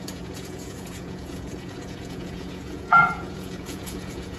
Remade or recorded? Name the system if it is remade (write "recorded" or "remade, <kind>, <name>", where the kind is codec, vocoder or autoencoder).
remade, vocoder, Vocos